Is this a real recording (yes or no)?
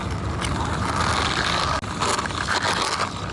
yes